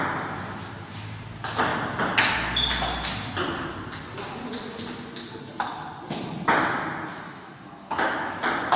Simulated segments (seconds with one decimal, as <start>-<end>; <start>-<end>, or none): 7.1-8.4